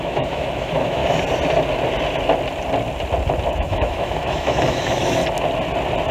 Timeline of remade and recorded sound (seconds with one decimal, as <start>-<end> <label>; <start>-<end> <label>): 0.0-1.0 remade; 1.0-3.5 recorded; 3.5-5.2 remade; 5.2-6.1 recorded